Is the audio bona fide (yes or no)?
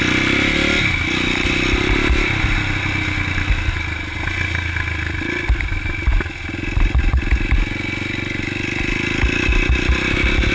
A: yes